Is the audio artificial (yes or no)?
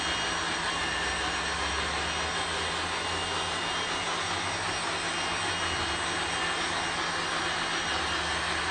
no